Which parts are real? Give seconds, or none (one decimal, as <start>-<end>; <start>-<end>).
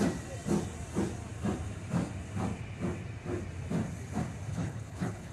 0.0-4.5